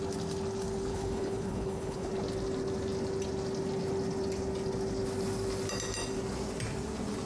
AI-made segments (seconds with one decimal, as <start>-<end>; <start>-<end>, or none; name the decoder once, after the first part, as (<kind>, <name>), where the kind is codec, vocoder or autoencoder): 0.9-2.1 (codec, HILCodec)